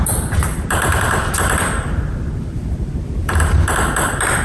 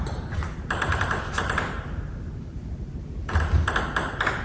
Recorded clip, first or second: second